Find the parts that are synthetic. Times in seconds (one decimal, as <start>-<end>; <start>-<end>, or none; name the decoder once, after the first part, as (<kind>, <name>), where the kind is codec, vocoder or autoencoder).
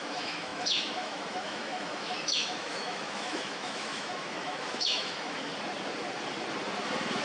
0.0-5.5 (autoencoder, DAC-VAE)